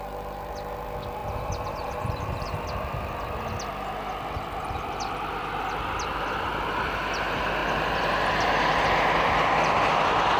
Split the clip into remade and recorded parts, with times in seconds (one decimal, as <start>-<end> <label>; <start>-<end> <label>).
0.0-1.2 recorded; 1.2-2.5 remade; 2.5-10.4 recorded

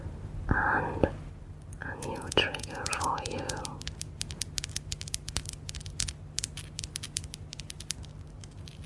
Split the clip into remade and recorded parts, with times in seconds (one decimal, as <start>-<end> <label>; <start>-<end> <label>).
0.0-1.8 recorded; 1.8-3.6 remade; 3.6-8.9 recorded

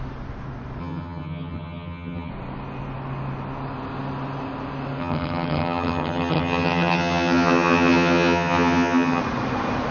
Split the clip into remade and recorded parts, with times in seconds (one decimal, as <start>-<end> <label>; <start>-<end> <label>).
0.0-0.8 recorded; 0.8-2.3 remade; 2.3-5.0 recorded; 5.0-9.2 remade; 9.2-9.9 recorded

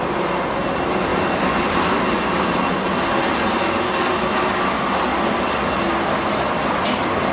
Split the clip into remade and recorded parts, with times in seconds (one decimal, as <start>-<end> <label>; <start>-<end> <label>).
0.0-7.3 recorded

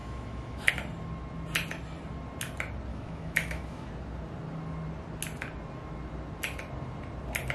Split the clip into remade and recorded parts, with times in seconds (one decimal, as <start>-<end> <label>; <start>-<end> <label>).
0.0-0.7 remade; 0.7-2.9 recorded; 2.9-3.9 remade; 3.9-7.5 recorded

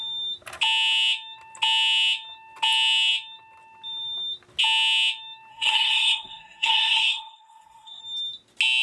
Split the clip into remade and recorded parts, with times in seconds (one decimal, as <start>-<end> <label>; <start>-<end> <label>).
0.0-5.5 recorded; 5.5-8.0 remade; 8.0-8.8 recorded

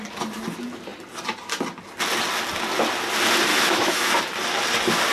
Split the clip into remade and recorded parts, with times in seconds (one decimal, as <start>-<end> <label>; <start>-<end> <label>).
0.0-3.5 recorded; 3.5-4.1 remade; 4.1-5.1 recorded